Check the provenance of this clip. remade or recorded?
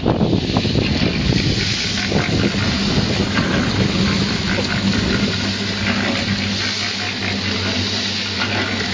recorded